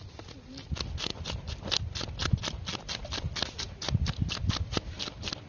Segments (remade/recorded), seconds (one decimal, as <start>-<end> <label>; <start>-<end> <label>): 0.0-5.5 recorded